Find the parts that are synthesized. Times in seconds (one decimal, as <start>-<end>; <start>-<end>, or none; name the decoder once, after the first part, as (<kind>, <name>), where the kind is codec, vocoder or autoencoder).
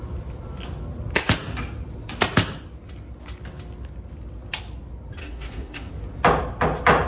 5.2-5.9 (codec, DAC)